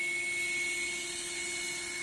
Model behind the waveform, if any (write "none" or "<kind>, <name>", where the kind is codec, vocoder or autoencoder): none